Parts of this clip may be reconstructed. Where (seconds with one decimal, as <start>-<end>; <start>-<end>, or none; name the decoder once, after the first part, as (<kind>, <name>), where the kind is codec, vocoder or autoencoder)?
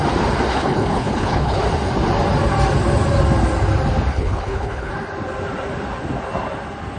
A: 0.5-1.6 (codec, HILCodec); 4.1-4.9